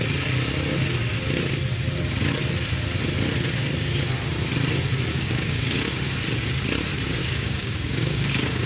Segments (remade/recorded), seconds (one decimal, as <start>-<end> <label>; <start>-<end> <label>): 0.0-5.1 recorded; 5.1-6.0 remade; 6.0-7.2 recorded; 7.2-8.7 remade